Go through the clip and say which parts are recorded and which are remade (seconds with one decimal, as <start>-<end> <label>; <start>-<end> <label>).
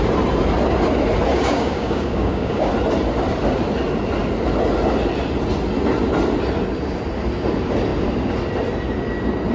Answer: 0.0-1.3 recorded; 1.3-2.7 remade; 2.7-9.5 recorded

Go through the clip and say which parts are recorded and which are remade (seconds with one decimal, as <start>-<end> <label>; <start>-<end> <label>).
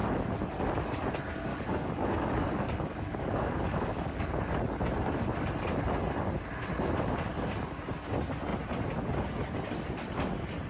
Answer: 0.0-1.5 recorded; 1.5-4.3 remade; 4.3-10.7 recorded